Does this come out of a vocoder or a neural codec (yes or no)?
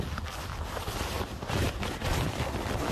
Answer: no